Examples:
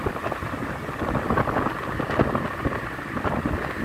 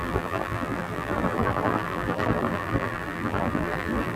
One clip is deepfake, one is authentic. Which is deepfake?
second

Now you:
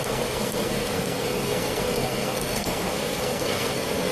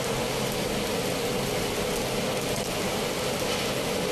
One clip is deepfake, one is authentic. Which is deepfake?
first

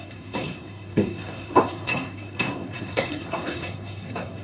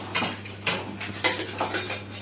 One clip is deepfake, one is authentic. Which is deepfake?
first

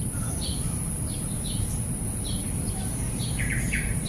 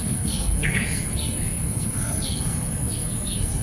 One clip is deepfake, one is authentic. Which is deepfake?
second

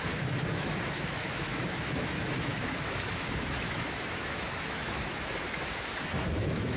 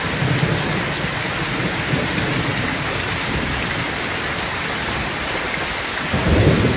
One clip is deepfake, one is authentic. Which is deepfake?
first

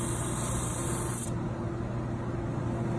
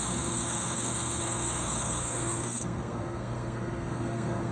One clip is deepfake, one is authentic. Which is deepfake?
second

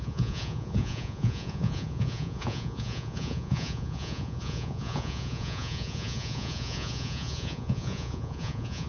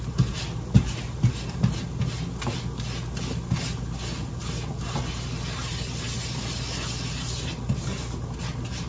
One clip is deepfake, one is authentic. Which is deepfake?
first